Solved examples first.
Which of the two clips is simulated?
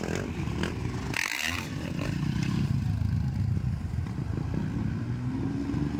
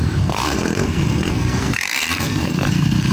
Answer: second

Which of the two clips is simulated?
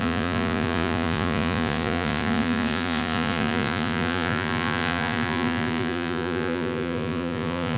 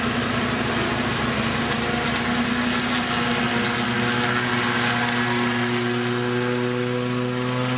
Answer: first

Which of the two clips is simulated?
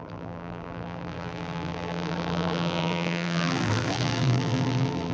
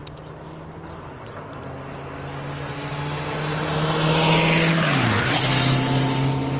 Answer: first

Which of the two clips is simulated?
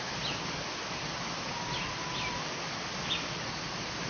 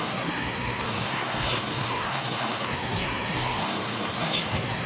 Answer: second